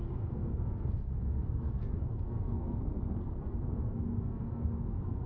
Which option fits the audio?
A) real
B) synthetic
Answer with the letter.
B